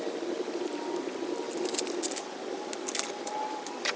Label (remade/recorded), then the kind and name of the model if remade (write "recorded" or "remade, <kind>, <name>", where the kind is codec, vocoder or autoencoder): recorded